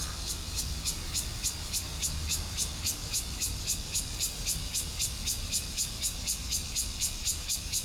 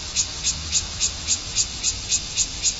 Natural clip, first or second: second